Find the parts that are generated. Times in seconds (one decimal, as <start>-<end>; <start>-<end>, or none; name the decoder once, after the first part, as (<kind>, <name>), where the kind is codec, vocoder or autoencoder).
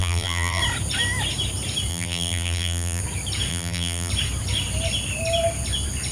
0.0-0.6 (vocoder, BigVGAN v2); 1.9-3.0; 3.5-4.1